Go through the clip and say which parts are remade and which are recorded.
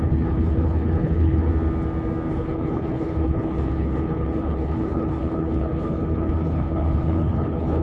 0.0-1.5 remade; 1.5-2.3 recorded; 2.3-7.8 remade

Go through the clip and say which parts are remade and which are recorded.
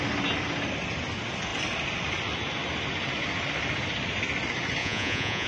0.0-4.8 recorded; 4.8-5.5 remade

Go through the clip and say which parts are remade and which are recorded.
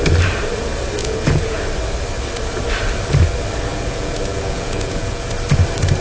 0.0-1.0 recorded; 1.0-1.6 remade; 1.6-3.7 recorded; 3.7-5.3 remade; 5.3-6.0 recorded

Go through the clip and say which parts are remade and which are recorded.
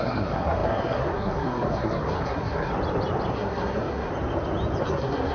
0.0-2.7 remade; 2.7-3.3 recorded; 3.3-4.1 remade; 4.1-4.8 recorded; 4.8-5.3 remade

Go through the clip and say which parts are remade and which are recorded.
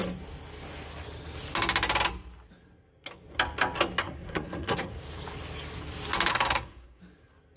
0.0-4.0 recorded; 4.0-4.9 remade; 4.9-6.3 recorded; 6.3-7.0 remade; 7.0-7.6 recorded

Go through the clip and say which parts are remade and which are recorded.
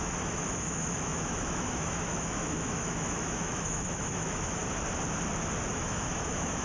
0.0-4.6 remade; 4.6-5.7 recorded; 5.7-6.6 remade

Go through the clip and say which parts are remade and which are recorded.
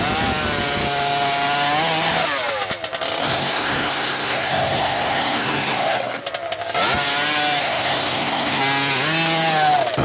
0.0-3.2 recorded; 3.2-6.2 remade; 6.2-7.6 recorded; 7.6-8.6 remade; 8.6-10.0 recorded